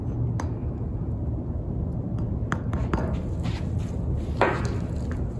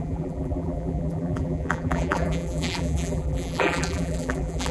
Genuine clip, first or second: first